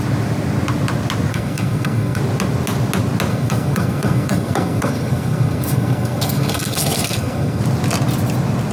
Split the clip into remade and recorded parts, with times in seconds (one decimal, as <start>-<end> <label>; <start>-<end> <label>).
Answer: 0.0-1.3 recorded; 1.3-2.2 remade; 2.2-3.3 recorded; 3.3-7.6 remade; 7.6-8.7 recorded